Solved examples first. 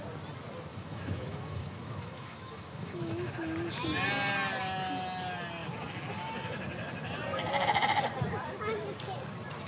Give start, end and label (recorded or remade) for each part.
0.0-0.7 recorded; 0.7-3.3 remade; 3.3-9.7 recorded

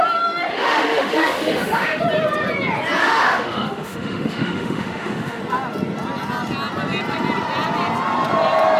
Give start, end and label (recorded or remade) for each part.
0.0-0.5 recorded; 0.5-2.0 remade; 2.0-3.0 recorded; 3.0-5.4 remade; 5.4-8.8 recorded